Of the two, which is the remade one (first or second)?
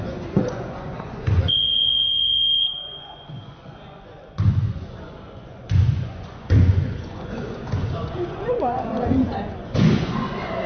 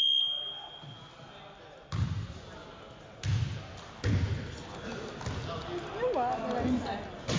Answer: first